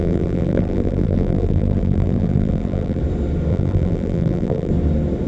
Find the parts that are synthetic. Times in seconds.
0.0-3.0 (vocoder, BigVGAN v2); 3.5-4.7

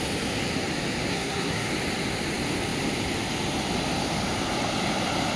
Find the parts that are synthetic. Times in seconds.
1.1-1.7 (codec, SNAC)

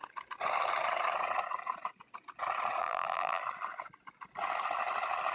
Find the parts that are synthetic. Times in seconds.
2.8-3.4 (vocoder, BigVGAN v2)

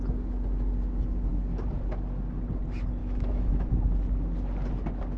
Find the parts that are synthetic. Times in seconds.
3.0-3.7 (autoencoder, DAC-VAE)

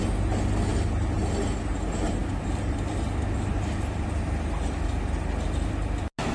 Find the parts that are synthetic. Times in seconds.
none

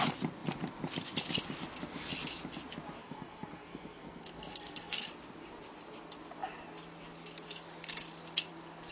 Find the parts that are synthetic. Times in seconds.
3.0-5.1 (codec, SNAC)